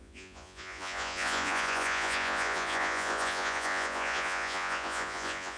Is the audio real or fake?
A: fake